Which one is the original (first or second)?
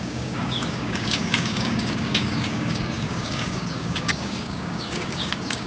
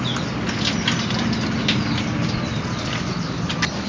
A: second